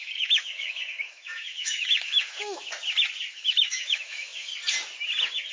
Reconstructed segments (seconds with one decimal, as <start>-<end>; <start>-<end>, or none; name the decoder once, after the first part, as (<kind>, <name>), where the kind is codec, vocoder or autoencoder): 0.0-2.6 (autoencoder, DAC-VAE); 3.3-4.5